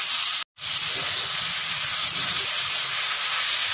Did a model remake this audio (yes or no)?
no